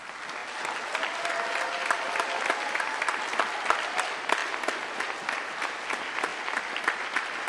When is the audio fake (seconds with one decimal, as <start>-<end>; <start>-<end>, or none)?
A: none